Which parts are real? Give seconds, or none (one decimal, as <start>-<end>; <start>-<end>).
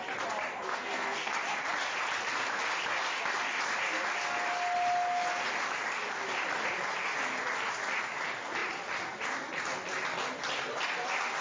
0.0-0.6; 1.3-11.4